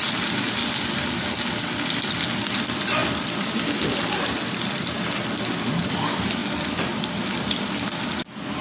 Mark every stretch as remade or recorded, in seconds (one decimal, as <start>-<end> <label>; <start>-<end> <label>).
0.0-0.6 remade; 0.6-2.5 recorded; 2.5-8.6 remade